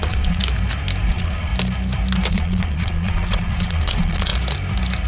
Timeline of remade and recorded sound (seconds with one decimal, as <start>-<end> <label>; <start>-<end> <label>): 0.0-0.4 remade; 0.4-1.1 recorded; 1.1-1.5 remade; 1.5-2.3 recorded; 2.3-4.3 remade; 4.3-5.1 recorded